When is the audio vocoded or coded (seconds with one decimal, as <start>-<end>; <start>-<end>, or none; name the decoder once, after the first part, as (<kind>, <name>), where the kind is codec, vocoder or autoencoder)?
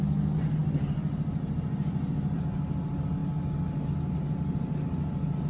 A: none